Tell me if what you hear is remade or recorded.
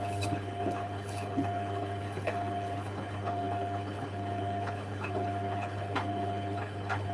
remade